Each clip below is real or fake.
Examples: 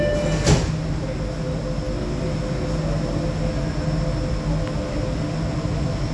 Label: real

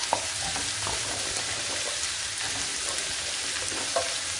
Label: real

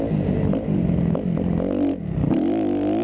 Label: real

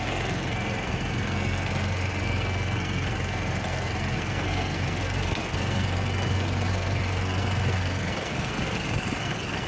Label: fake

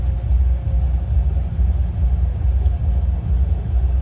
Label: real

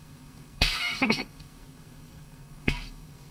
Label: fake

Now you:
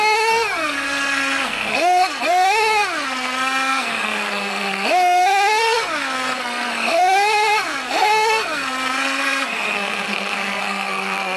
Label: fake